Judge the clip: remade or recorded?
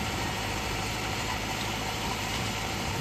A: remade